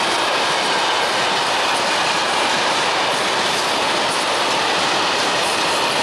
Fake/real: fake